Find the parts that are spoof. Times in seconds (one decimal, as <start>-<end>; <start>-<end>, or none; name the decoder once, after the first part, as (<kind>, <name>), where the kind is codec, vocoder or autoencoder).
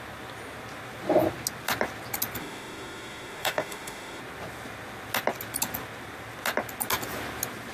2.4-4.2 (autoencoder, DAC-VAE)